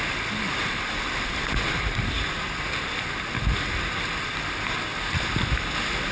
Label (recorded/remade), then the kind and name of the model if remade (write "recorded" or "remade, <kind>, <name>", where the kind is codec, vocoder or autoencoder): recorded